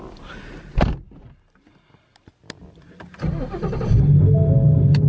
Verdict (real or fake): real